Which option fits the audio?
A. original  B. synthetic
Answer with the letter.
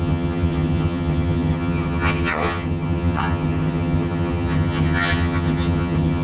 B